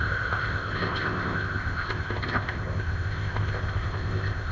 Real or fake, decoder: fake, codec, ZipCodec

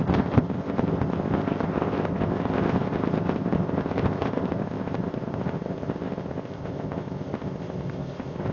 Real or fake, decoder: fake, codec, ZipCodec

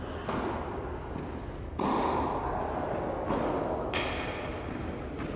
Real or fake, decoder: real